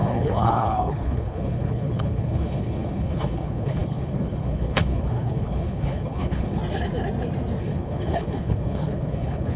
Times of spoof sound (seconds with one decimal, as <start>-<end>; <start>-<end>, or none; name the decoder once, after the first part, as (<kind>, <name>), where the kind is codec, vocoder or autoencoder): 0.0-6.6 (codec, HILCodec); 7.6-9.6